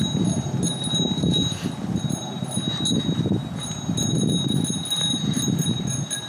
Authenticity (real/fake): real